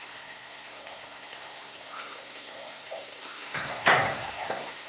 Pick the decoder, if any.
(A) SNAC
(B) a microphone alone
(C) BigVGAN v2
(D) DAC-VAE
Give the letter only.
A